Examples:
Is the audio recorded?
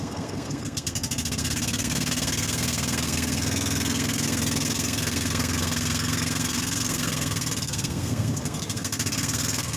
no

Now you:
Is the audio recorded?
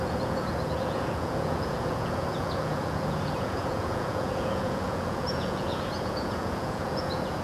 no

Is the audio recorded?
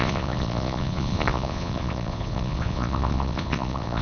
no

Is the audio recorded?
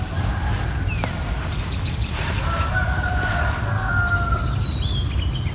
yes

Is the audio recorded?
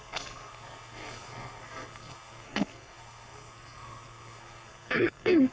no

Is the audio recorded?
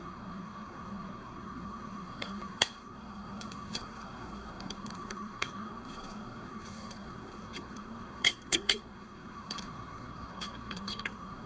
no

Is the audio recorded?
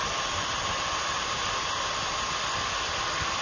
no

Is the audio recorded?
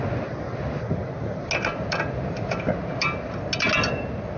yes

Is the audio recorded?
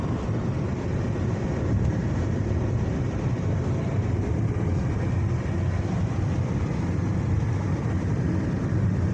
no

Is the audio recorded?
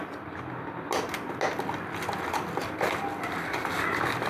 yes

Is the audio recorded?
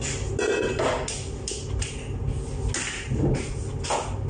yes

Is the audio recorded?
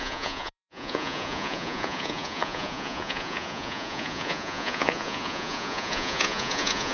no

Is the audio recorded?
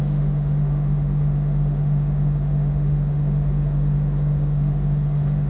no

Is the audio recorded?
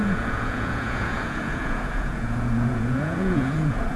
no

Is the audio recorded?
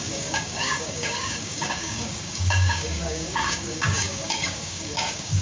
no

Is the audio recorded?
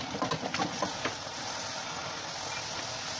yes